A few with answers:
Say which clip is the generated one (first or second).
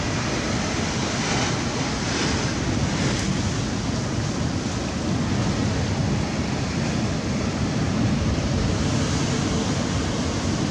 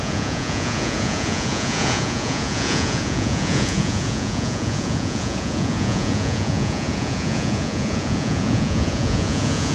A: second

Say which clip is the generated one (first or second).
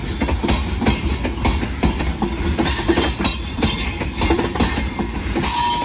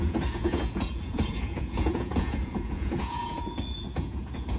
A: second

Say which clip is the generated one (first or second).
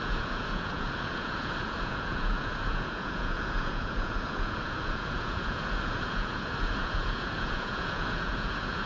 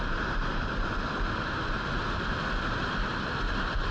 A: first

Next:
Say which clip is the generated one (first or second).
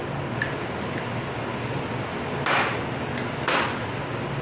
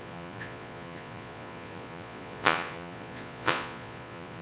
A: second